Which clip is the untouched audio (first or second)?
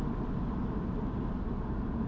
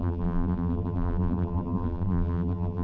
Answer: first